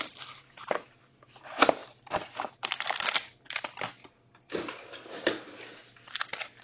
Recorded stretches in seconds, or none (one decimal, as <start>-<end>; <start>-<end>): 0.0-6.6

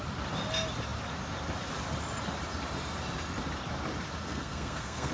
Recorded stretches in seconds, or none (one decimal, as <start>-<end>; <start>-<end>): 0.0-4.2

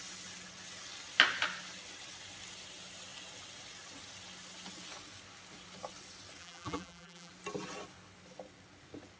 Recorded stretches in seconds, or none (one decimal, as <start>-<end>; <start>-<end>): 0.0-6.4; 7.3-9.2

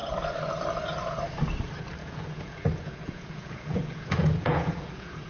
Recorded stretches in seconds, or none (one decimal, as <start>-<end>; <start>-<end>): 0.0-2.0

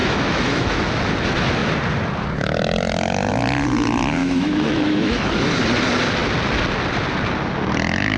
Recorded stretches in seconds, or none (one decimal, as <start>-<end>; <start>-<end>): 0.8-4.2; 5.3-8.2

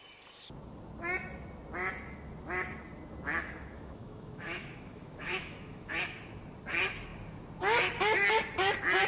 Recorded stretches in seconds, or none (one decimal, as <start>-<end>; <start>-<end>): 0.0-3.4; 5.9-9.1

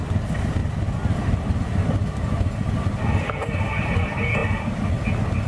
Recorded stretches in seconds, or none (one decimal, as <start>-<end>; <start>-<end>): 0.0-5.5

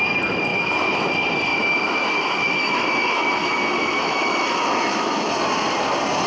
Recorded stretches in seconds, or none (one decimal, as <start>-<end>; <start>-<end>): 0.0-0.5; 1.1-1.5; 5.3-6.3